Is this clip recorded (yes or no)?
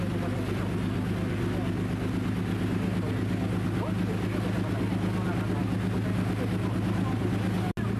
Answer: yes